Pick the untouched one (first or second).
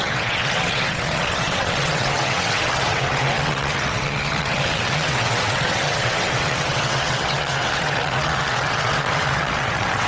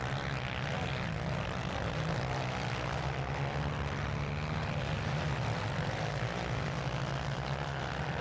second